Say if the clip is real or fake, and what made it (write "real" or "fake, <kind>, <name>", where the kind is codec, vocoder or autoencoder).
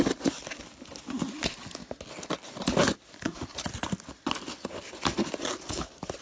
real